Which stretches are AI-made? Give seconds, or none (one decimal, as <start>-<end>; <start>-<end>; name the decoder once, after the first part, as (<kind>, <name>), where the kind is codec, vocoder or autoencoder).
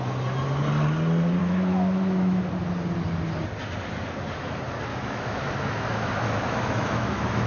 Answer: 1.4-2.5 (autoencoder, DAC-VAE); 4.9-7.5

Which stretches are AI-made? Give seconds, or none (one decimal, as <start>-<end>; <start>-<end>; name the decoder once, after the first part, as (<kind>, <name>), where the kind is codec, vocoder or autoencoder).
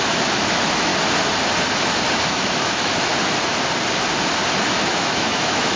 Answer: 0.0-0.9 (autoencoder, DAC-VAE); 2.1-3.1; 4.7-5.8